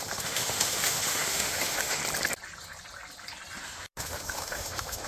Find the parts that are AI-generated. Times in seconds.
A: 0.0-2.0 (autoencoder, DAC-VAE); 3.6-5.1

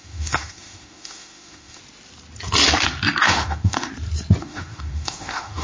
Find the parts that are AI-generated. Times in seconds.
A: 0.0-1.8 (autoencoder, DAC-VAE); 3.2-3.9; 4.4-5.6